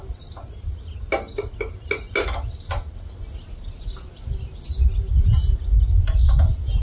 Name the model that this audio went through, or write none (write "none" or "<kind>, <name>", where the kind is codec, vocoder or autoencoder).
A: none